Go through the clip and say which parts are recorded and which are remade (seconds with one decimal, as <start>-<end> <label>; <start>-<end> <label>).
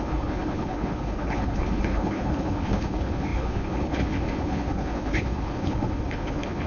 0.0-6.7 remade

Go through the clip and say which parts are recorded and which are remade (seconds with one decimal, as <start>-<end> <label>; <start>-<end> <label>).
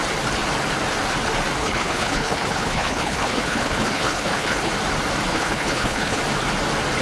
0.0-1.6 recorded; 1.6-4.7 remade; 4.7-5.3 recorded; 5.3-6.2 remade; 6.2-7.0 recorded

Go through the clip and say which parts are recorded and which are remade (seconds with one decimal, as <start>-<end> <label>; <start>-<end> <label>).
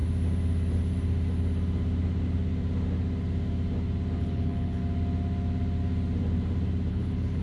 0.0-4.2 recorded; 4.2-4.8 remade; 4.8-6.9 recorded; 6.9-7.4 remade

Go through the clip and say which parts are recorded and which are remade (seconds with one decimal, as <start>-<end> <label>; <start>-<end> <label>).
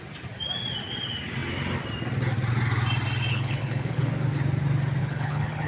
0.0-3.3 recorded; 3.3-4.1 remade; 4.1-5.0 recorded; 5.0-5.7 remade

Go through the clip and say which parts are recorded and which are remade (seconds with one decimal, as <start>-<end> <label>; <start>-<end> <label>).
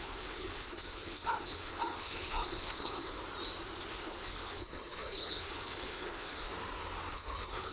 0.0-3.2 remade; 3.2-3.9 recorded; 3.9-6.5 remade; 6.5-7.1 recorded; 7.1-7.7 remade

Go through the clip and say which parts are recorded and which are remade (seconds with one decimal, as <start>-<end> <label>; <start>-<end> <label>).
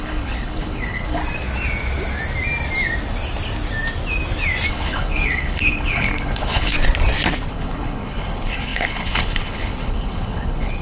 0.0-1.2 remade; 1.2-4.7 recorded; 4.7-6.7 remade; 6.7-7.5 recorded; 7.5-10.8 remade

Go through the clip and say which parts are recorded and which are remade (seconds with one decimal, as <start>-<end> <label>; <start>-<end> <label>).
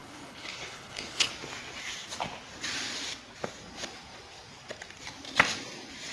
0.0-1.3 remade; 1.3-6.1 recorded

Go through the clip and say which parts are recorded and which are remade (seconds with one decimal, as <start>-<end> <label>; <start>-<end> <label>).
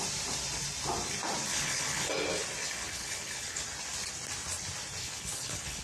0.0-1.5 recorded; 1.5-2.1 remade; 2.1-2.6 recorded; 2.6-3.6 remade; 3.6-5.0 recorded; 5.0-5.8 remade